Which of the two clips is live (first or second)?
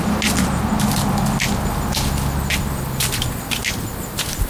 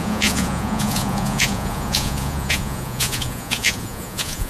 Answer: first